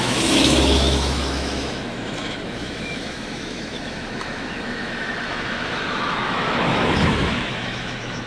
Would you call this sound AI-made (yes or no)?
yes